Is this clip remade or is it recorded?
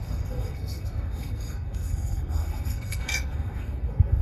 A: remade